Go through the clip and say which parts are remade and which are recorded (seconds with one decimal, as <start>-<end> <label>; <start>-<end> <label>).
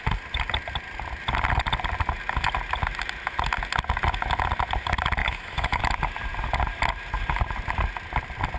0.0-5.2 recorded; 5.2-5.8 remade; 5.8-8.6 recorded